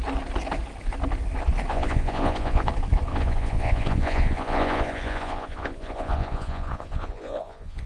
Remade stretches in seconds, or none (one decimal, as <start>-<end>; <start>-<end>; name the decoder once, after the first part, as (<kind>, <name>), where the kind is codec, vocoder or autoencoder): 1.7-2.7 (vocoder, Vocos); 3.1-7.9